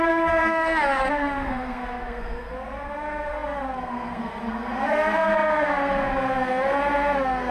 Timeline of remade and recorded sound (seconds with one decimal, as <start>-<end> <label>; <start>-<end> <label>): 0.0-7.5 remade